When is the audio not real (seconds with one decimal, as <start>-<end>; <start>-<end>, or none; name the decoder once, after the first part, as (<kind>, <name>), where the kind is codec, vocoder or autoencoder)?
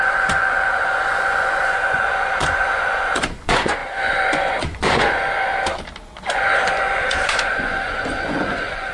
0.0-5.5 (vocoder, Vocos); 6.2-8.9